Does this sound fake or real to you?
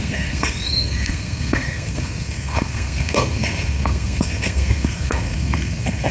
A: fake